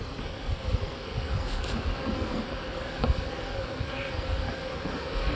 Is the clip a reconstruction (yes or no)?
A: yes